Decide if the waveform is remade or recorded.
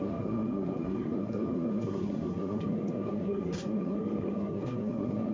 remade